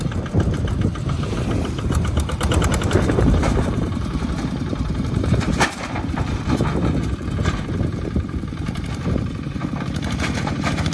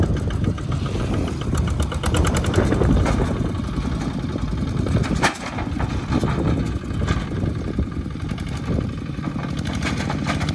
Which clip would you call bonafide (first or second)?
second